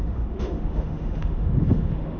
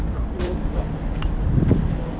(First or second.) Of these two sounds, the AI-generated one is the first